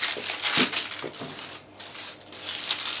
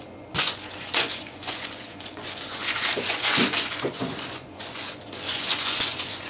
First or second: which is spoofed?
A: second